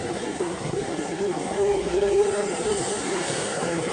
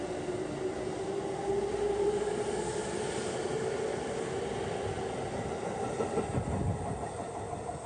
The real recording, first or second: second